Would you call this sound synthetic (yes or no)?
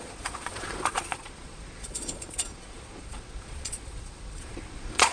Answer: yes